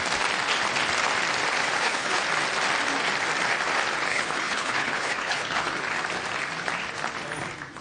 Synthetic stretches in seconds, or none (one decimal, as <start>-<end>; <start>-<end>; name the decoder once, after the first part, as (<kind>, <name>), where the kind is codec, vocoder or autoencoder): 1.6-2.2 (codec, HILCodec); 4.1-5.8